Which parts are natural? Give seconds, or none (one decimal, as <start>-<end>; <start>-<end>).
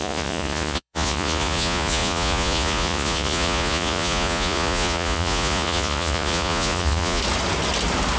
7.2-8.2